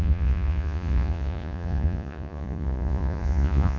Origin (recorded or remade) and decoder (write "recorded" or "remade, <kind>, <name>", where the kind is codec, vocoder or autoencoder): remade, vocoder, Vocos